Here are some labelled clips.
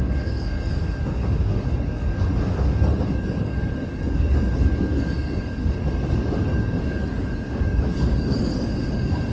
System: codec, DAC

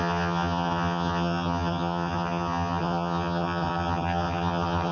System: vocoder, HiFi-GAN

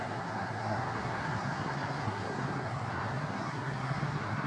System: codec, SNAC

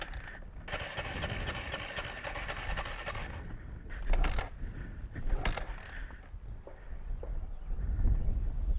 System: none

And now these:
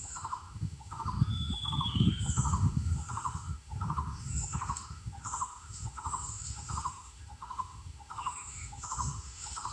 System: autoencoder, DAC-VAE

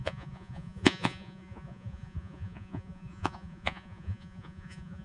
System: vocoder, Vocos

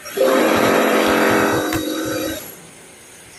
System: vocoder, BigVGAN v2